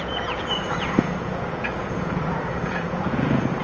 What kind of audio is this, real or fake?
fake